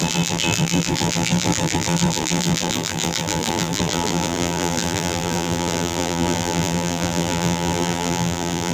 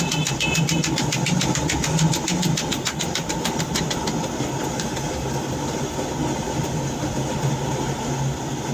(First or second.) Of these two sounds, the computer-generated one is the first